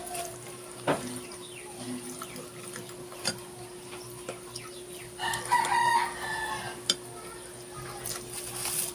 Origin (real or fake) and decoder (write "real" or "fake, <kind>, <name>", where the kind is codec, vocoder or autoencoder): real